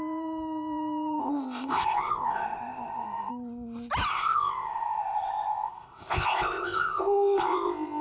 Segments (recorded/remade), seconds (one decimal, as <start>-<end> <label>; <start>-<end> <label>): 0.0-1.2 recorded; 1.2-3.3 remade; 3.3-4.1 recorded; 4.1-8.0 remade